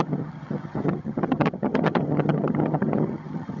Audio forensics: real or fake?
fake